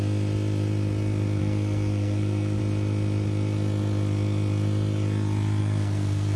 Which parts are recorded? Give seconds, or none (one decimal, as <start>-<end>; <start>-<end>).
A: 0.0-1.4; 2.6-5.6